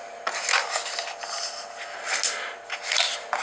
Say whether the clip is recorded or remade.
recorded